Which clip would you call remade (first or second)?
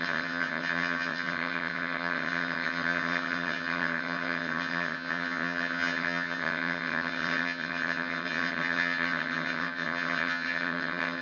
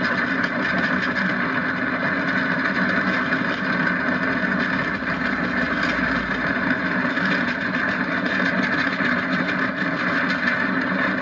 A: first